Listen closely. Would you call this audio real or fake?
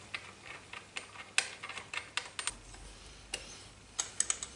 real